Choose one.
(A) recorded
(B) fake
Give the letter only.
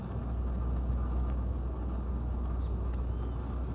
A